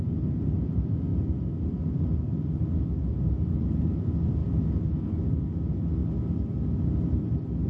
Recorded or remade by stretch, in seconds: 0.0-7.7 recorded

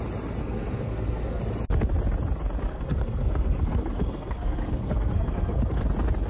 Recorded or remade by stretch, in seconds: 0.0-0.4 recorded; 0.4-1.4 remade; 1.4-2.7 recorded; 2.7-5.8 remade; 5.8-6.3 recorded

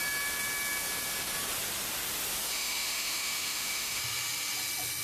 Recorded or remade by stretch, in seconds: 0.0-2.4 recorded; 2.4-4.0 remade; 4.0-5.0 recorded

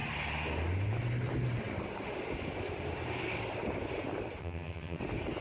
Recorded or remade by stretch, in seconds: 0.0-4.4 recorded; 4.4-5.0 remade; 5.0-5.4 recorded